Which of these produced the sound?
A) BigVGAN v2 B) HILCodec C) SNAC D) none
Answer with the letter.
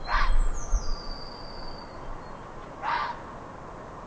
D